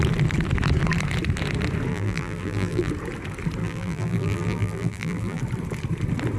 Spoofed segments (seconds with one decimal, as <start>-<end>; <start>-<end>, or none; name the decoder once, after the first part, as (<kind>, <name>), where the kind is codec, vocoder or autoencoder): 1.9-2.9 (vocoder, BigVGAN v2); 3.6-5.4